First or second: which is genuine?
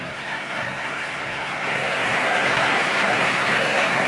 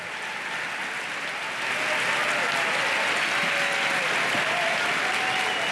second